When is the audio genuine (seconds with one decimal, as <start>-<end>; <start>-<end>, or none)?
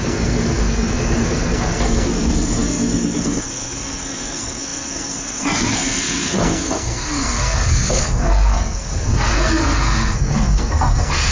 none